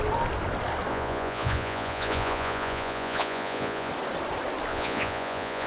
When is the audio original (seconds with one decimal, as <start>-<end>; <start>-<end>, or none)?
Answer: 0.0-0.9; 3.9-4.7